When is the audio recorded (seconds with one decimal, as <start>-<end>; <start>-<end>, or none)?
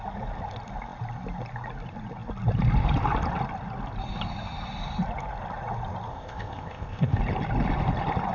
0.0-6.1; 7.2-8.3